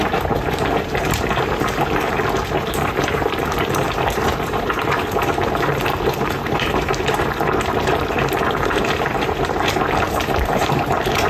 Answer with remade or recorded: remade